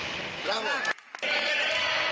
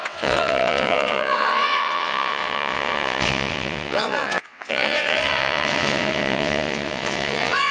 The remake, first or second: second